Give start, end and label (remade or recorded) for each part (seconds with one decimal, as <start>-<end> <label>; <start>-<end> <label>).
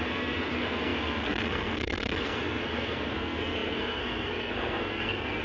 0.0-5.4 remade